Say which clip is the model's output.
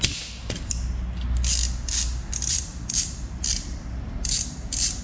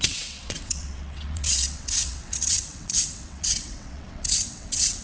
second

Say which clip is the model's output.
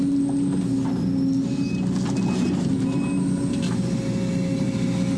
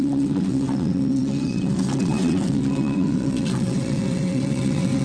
second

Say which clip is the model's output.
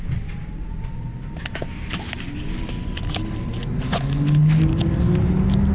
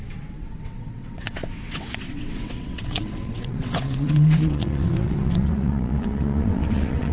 second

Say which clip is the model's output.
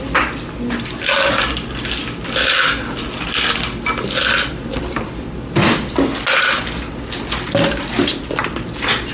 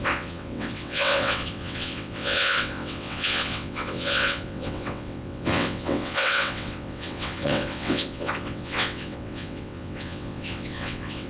second